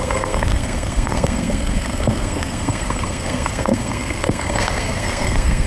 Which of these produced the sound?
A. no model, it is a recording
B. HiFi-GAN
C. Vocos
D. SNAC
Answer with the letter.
D